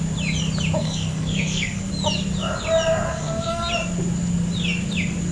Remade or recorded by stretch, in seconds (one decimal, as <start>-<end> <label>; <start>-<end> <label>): 0.0-0.8 recorded; 0.8-1.9 remade; 1.9-3.1 recorded; 3.1-3.7 remade; 3.7-5.3 recorded